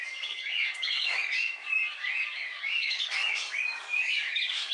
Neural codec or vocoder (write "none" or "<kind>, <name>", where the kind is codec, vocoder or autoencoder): codec, DAC